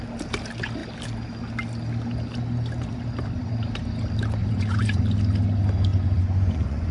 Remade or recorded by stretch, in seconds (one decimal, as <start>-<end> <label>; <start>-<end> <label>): 0.0-4.4 recorded; 4.4-5.0 remade; 5.0-5.9 recorded; 5.9-6.9 remade